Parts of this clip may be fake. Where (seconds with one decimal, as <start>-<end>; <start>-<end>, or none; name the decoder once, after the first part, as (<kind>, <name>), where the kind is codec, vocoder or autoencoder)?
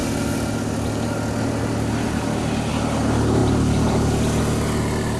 3.4-4.4 (vocoder, BigVGAN v2)